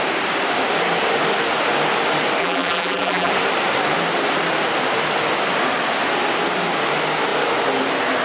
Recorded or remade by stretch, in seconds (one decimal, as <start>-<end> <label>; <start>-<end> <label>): 0.0-2.4 recorded; 2.4-3.3 remade; 3.3-8.2 recorded